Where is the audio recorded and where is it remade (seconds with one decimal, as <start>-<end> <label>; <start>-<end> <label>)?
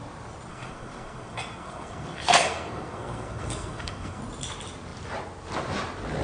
0.0-0.5 recorded; 0.5-4.2 remade; 4.2-6.2 recorded